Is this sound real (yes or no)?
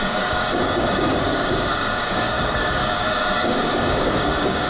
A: no